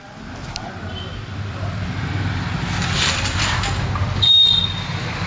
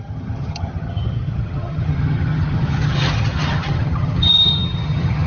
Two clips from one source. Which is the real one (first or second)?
first